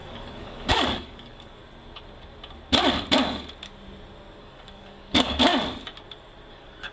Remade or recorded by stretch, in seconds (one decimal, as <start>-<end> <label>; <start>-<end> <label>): 0.0-1.6 remade; 1.6-4.4 recorded; 4.4-5.5 remade; 5.5-6.5 recorded; 6.5-6.9 remade